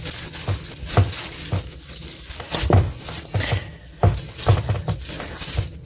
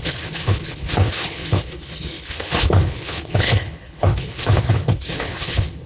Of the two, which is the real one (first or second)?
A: first